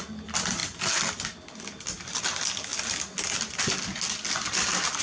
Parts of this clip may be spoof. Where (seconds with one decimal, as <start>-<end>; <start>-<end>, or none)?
none